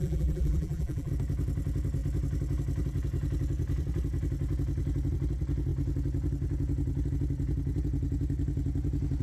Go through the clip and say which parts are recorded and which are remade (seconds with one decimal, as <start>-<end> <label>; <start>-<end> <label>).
0.0-1.1 remade; 1.1-9.2 recorded